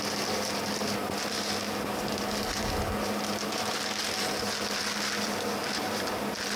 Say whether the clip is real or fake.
real